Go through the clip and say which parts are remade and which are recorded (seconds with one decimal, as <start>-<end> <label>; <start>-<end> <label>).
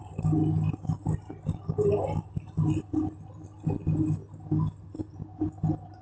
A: 0.0-6.0 recorded